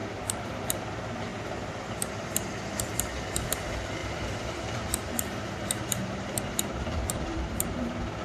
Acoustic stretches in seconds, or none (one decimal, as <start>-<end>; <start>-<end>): 0.6-4.0